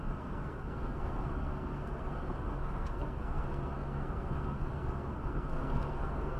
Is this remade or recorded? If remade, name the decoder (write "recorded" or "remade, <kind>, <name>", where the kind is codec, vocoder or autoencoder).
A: remade, codec, SNAC